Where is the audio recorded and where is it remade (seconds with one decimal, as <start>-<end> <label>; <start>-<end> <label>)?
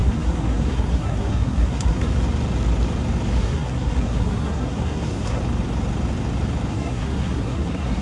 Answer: 0.0-2.1 remade; 2.1-3.4 recorded; 3.4-5.4 remade; 5.4-6.7 recorded; 6.7-8.0 remade